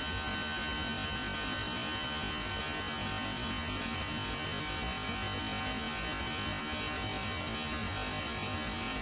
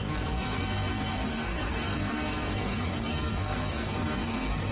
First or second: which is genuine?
first